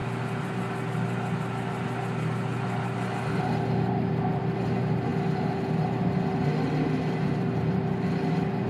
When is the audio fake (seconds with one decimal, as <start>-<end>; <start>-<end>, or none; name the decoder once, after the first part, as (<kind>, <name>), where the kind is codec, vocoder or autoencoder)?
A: none

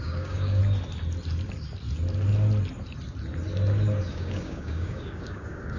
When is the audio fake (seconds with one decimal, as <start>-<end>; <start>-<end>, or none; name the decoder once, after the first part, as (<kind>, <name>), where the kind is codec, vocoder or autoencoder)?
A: 0.0-0.6 (codec, DAC); 4.1-5.8

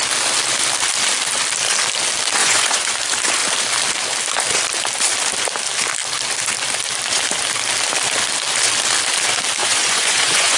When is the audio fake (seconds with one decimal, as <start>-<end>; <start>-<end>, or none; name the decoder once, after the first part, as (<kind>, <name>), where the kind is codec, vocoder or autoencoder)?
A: 2.4-2.9 (vocoder, Vocos); 9.6-10.6

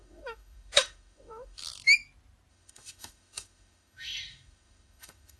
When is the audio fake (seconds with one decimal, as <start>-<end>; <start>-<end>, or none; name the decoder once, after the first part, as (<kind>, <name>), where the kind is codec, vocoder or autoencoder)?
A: 0.0-1.6 (autoencoder, DAC-VAE); 2.5-5.4

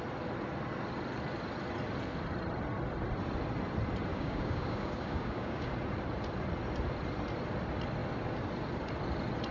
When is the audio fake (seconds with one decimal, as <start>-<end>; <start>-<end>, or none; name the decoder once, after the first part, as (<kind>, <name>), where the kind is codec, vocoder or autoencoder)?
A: 4.1-5.7 (codec, DAC)

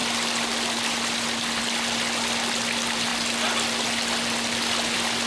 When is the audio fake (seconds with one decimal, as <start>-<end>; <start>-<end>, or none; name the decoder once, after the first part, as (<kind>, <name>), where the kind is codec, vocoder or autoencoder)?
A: none

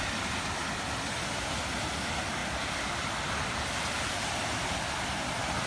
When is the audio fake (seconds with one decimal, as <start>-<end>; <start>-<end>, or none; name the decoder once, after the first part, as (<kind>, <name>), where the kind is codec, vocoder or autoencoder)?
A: none